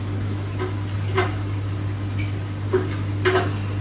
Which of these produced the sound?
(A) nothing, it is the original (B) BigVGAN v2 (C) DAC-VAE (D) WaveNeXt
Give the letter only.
A